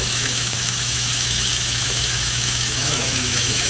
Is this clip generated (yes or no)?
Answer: yes